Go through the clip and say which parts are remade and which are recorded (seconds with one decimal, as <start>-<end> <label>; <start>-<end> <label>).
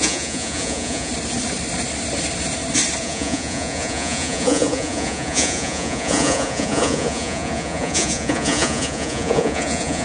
0.0-1.1 remade; 1.1-3.0 recorded; 3.0-10.0 remade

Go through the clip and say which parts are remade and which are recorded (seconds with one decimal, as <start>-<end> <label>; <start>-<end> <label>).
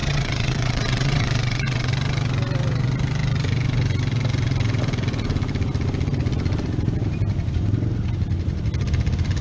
0.0-1.9 remade; 1.9-9.4 recorded